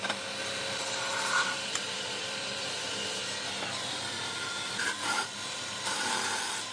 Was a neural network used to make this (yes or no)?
yes